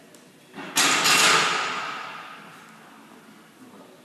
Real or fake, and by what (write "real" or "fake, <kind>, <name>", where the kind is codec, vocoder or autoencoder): real